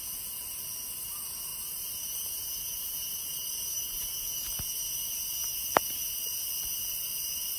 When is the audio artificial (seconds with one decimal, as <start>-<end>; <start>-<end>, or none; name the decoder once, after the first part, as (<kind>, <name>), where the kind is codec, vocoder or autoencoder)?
1.5-4.5 (vocoder, BigVGAN v2); 7.0-7.6